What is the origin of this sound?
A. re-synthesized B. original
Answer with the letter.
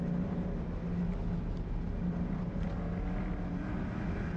B